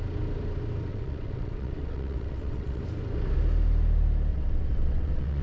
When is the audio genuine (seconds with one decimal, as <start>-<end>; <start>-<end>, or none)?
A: 0.0-0.9; 2.8-4.3